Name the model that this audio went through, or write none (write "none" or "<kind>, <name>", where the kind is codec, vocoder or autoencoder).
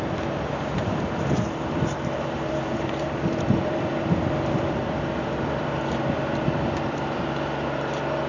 vocoder, BigVGAN v2